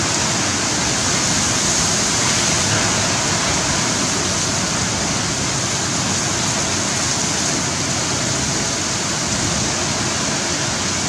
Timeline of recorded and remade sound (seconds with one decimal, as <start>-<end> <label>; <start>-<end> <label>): 0.0-11.1 recorded